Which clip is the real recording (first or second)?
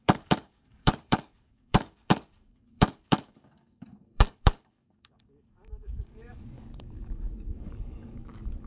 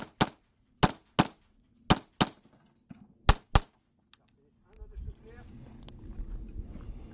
second